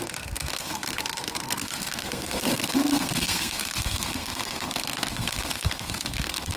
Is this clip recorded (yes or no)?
no